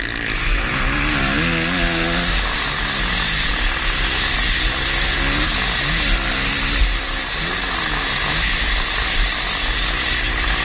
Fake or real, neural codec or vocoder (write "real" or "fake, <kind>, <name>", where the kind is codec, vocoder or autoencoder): real